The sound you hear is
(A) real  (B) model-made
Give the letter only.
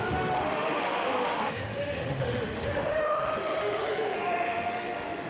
B